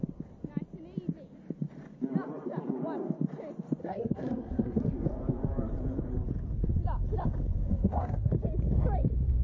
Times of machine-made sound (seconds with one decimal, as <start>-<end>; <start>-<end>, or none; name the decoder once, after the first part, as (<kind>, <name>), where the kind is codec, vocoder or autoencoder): 3.8-4.8 (codec, SNAC); 7.7-8.3